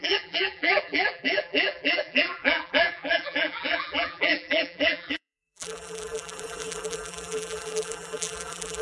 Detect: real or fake fake